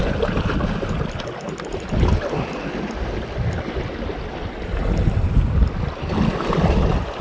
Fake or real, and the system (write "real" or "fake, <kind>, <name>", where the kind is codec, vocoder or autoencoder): real